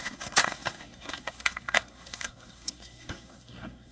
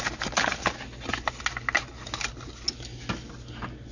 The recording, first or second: second